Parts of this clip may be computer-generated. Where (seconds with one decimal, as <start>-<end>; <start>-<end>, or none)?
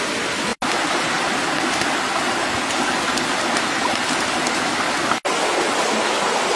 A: none